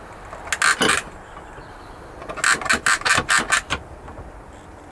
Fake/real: real